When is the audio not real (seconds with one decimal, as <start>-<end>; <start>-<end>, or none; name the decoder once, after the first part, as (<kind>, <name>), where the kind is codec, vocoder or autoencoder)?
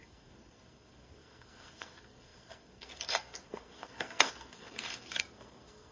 0.0-5.9 (codec, SNAC)